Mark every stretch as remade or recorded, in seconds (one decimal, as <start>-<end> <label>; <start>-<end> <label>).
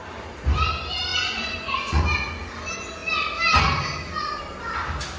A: 0.0-1.1 recorded; 1.1-2.0 remade; 2.0-5.2 recorded